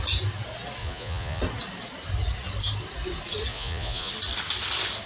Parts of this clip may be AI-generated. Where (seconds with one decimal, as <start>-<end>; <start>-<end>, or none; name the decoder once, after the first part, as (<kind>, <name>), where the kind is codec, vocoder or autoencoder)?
0.8-1.4 (vocoder, Vocos); 3.5-4.1

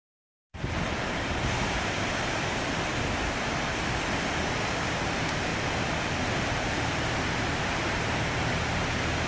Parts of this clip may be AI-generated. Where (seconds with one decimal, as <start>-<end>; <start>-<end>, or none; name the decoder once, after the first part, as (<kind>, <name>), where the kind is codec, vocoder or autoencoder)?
0.0-2.9 (vocoder, BigVGAN v2); 4.1-9.3

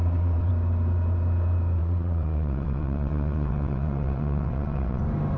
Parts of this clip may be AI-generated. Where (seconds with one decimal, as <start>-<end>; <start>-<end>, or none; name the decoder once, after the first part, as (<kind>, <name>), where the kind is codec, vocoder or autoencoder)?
0.0-0.5 (vocoder, WaveNeXt); 1.8-5.0